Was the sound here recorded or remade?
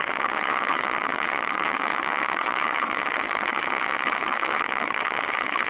remade